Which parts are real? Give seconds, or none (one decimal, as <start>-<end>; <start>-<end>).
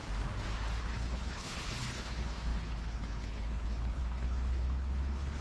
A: 0.0-0.8